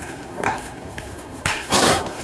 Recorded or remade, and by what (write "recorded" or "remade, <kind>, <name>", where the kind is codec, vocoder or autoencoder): remade, codec, SNAC